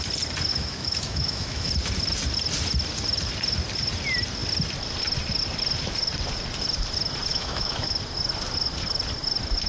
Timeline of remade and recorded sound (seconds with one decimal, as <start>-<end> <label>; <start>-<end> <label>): 0.0-0.5 recorded; 0.5-1.7 remade; 1.7-7.3 recorded; 7.3-7.9 remade; 7.9-9.7 recorded